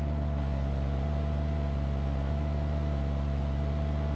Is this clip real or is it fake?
real